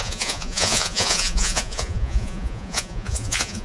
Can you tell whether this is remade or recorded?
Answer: remade